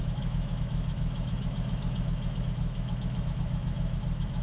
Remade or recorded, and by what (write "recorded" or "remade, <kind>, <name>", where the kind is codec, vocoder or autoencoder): remade, autoencoder, DAC-VAE